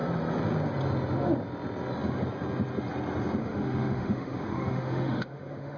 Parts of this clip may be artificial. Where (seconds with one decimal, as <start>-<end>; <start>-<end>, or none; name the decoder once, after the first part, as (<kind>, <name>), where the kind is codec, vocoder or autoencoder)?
3.4-5.8 (autoencoder, DAC-VAE)